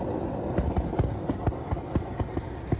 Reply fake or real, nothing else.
real